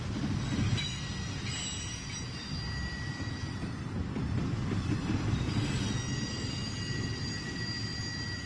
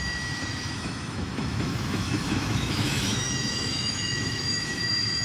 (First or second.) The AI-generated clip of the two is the second